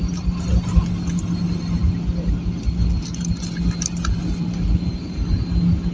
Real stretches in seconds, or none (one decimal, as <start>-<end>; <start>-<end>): 0.0-5.9